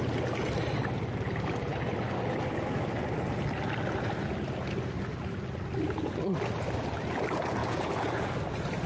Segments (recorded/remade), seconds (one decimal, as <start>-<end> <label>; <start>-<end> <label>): 0.0-7.6 recorded; 7.6-8.3 remade; 8.3-8.9 recorded